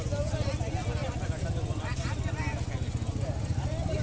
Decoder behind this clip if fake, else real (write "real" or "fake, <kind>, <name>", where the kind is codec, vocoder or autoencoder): fake, vocoder, BigVGAN v2